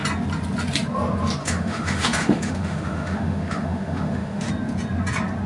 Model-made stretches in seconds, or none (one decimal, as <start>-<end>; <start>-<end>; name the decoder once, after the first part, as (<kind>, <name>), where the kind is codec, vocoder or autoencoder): 1.4-4.5 (autoencoder, DAC-VAE)